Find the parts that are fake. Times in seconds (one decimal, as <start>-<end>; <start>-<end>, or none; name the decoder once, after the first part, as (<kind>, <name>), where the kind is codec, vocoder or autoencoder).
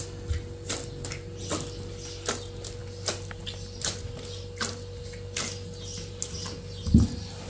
none